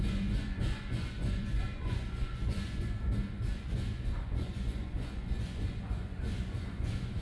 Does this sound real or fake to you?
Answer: fake